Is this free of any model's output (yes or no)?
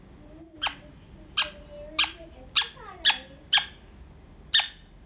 yes